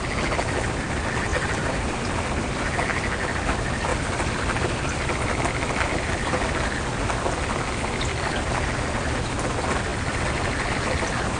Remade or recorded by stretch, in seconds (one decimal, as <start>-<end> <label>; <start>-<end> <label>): 0.0-1.3 recorded; 1.3-2.1 remade; 2.1-3.9 recorded; 3.9-6.4 remade; 6.4-9.9 recorded; 9.9-11.0 remade; 11.0-11.4 recorded